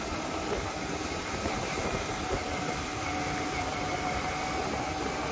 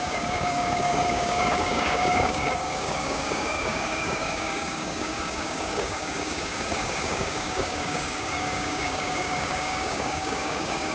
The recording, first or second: first